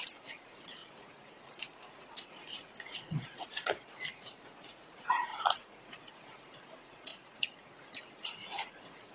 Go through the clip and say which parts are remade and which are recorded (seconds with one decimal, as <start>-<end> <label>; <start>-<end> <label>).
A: 0.0-9.1 remade